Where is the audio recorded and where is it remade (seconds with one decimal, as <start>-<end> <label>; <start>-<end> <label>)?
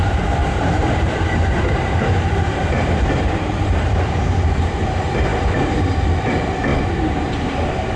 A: 0.0-0.4 recorded; 0.4-4.6 remade; 4.6-5.3 recorded; 5.3-6.0 remade; 6.0-8.0 recorded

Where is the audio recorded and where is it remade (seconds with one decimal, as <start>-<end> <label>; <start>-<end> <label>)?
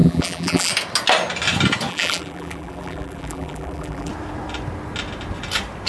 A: 0.0-0.7 remade; 0.7-1.9 recorded; 1.9-4.1 remade; 4.1-5.9 recorded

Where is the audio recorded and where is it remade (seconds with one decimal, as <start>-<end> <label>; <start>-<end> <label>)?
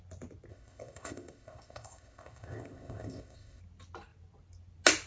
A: 0.0-0.5 recorded; 0.5-3.6 remade; 3.6-5.1 recorded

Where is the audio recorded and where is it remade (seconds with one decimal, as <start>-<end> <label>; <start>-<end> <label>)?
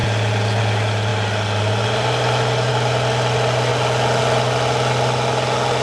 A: 0.0-5.8 recorded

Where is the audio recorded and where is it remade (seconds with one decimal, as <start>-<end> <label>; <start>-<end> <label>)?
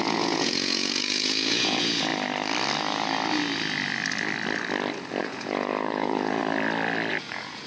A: 0.0-2.1 remade; 2.1-5.2 recorded; 5.2-6.4 remade; 6.4-7.1 recorded; 7.1-7.7 remade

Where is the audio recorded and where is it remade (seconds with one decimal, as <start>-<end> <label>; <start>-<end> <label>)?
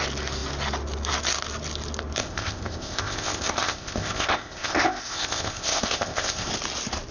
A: 0.0-2.2 recorded; 2.2-6.5 remade; 6.5-7.1 recorded